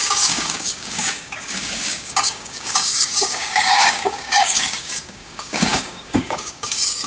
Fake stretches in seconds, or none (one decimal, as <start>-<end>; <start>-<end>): 0.0-7.1